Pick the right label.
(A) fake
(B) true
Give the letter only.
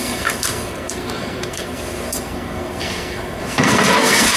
A